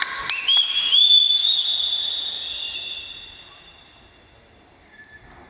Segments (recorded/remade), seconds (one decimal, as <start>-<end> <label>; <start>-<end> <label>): 0.0-5.5 recorded

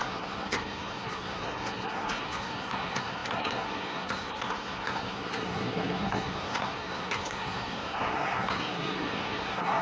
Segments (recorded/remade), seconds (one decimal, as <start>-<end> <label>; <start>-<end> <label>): 0.0-9.8 remade

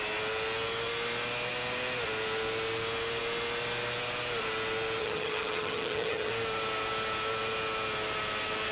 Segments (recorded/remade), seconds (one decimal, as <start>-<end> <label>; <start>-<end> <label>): 0.0-5.0 recorded; 5.0-6.3 remade; 6.3-8.7 recorded

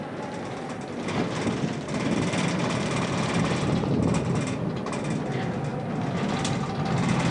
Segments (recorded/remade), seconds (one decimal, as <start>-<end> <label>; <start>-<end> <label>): 0.0-7.3 recorded

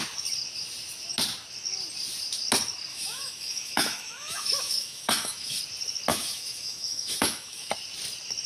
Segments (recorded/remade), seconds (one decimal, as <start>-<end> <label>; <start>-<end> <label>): 0.0-2.9 recorded; 2.9-5.6 remade; 5.6-6.1 recorded; 6.1-7.7 remade; 7.7-8.5 recorded